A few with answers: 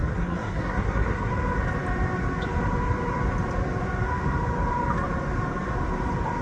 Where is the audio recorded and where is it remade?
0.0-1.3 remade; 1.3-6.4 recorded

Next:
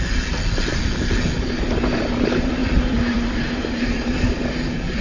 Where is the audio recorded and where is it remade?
0.0-2.6 recorded; 2.6-3.8 remade; 3.8-5.0 recorded